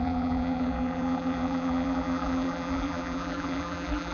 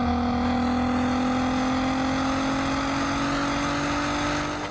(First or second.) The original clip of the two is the second